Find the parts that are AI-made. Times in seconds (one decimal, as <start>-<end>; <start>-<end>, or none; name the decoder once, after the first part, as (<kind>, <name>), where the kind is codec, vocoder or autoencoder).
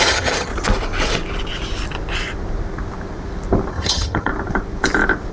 0.0-0.5 (vocoder, HiFi-GAN); 3.7-4.3